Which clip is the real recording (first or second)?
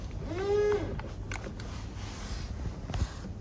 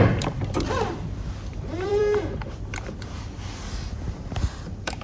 first